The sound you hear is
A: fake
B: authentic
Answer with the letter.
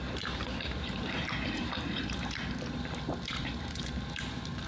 A